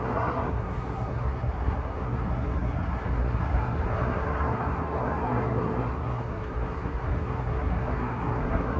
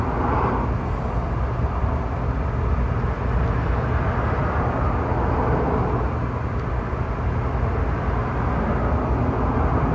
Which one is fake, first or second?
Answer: first